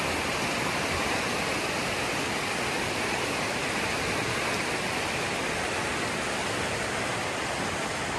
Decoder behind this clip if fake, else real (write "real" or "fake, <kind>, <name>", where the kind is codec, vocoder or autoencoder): real